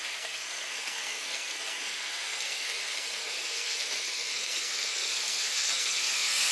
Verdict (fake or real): fake